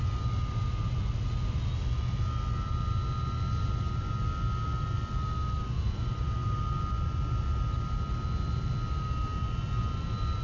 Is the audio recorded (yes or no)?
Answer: yes